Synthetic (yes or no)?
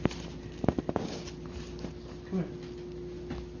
no